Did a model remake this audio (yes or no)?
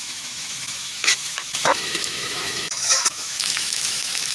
yes